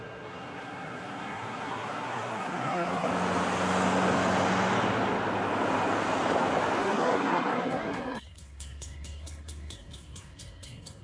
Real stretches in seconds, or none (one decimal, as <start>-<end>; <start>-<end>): 3.1-6.8